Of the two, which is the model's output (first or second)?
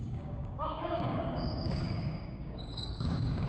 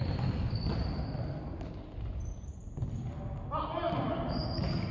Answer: first